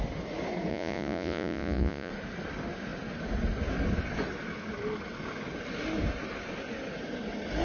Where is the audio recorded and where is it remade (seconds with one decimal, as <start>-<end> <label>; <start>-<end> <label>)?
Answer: 0.0-0.7 recorded; 0.7-2.1 remade; 2.1-7.6 recorded